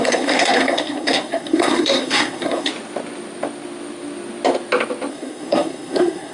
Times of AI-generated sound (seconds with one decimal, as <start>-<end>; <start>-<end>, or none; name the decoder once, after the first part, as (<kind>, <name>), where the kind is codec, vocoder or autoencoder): 0.0-2.7 (codec, SNAC); 5.1-6.3